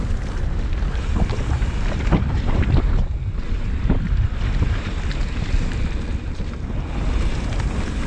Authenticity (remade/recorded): recorded